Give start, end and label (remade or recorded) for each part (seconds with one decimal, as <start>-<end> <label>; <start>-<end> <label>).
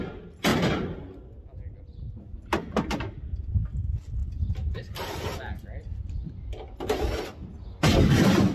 0.0-0.5 recorded; 0.5-2.2 remade; 2.2-4.2 recorded; 4.2-6.4 remade; 6.4-8.5 recorded